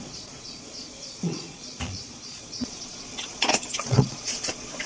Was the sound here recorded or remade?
remade